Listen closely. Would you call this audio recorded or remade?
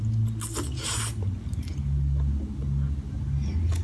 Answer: recorded